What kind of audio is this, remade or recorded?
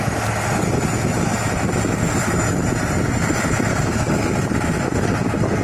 recorded